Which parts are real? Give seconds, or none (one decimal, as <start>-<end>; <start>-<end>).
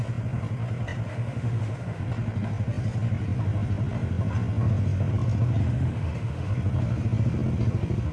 0.0-1.1; 2.0-5.6; 6.5-8.1